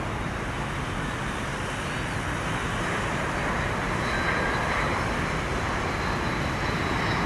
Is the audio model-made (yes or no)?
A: no